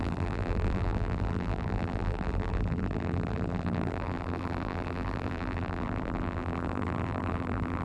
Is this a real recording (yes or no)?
no